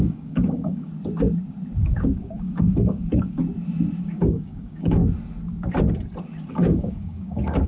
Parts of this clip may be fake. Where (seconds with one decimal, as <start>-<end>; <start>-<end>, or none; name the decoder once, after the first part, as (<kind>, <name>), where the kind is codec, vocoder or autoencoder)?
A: 0.0-0.9 (codec, DAC); 1.8-3.4; 4.0-5.0; 6.5-7.7